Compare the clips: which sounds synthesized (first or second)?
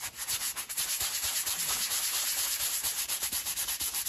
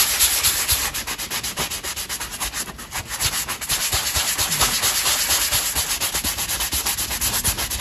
first